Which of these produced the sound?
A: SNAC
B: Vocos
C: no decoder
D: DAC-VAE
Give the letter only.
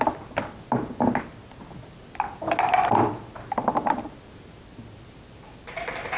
C